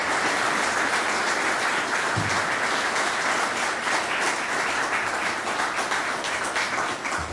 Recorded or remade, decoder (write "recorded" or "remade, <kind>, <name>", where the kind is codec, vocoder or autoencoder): recorded